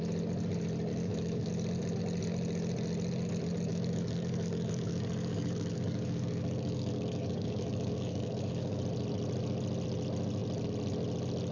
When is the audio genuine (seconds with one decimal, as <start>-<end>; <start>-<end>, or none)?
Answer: 0.0-0.9; 1.5-3.7; 8.8-11.5